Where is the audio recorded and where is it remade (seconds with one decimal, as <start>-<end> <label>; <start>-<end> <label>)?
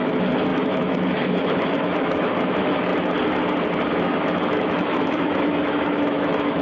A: 0.0-2.9 remade; 2.9-3.9 recorded; 3.9-6.6 remade